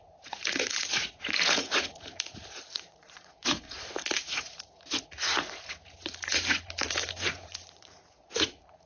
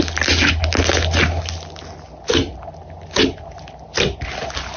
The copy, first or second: first